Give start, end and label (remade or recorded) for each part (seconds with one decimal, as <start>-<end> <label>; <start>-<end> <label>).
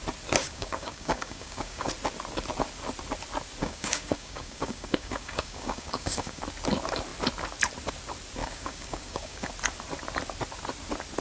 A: 0.0-0.4 recorded; 0.4-1.9 remade; 1.9-3.6 recorded; 3.6-6.4 remade; 6.4-8.4 recorded; 8.4-9.5 remade; 9.5-11.2 recorded